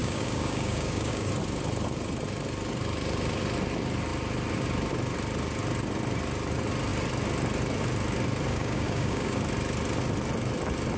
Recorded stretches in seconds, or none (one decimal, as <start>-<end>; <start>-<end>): 1.3-8.5; 9.4-11.0